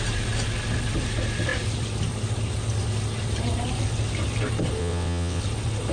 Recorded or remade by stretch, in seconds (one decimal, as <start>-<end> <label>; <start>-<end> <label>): 0.0-4.8 recorded; 4.8-5.4 remade; 5.4-5.9 recorded